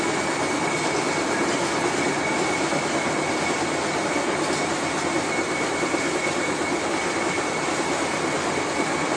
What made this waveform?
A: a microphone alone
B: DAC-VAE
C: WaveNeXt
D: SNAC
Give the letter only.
A